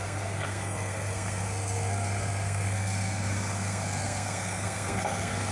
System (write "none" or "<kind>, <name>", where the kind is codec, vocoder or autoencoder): codec, SNAC